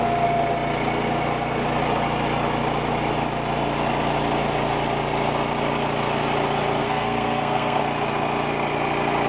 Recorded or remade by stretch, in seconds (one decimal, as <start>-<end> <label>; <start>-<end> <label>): 0.0-6.8 recorded; 6.8-7.8 remade; 7.8-9.3 recorded